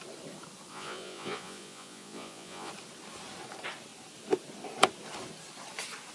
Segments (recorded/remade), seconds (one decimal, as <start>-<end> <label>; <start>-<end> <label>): 0.0-0.7 recorded; 0.7-2.7 remade; 2.7-6.1 recorded